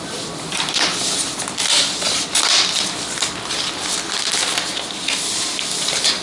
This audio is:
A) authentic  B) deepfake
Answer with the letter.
B